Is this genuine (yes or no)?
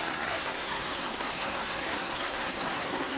no